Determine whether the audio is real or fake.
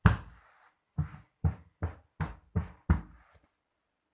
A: real